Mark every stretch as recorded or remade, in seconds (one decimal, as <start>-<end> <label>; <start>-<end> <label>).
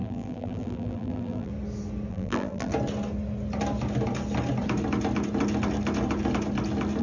0.0-1.5 remade; 1.5-2.1 recorded; 2.1-2.7 remade; 2.7-7.0 recorded